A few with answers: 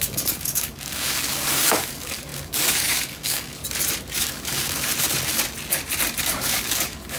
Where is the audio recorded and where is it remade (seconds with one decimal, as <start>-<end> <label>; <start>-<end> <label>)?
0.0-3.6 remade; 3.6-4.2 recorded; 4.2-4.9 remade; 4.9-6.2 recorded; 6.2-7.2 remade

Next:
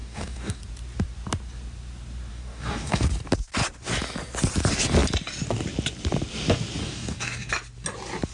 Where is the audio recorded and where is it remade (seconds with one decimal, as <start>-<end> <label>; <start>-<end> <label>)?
0.0-0.6 remade; 0.6-2.3 recorded; 2.3-3.1 remade; 3.1-6.8 recorded; 6.8-7.5 remade; 7.5-8.3 recorded

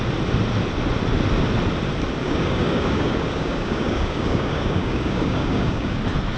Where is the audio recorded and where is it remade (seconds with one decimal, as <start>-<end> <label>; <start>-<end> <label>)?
0.0-2.2 recorded; 2.2-6.0 remade; 6.0-6.4 recorded